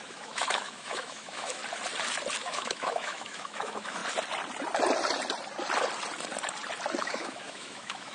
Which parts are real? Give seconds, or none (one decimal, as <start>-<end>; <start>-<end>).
1.6-2.4; 4.0-7.0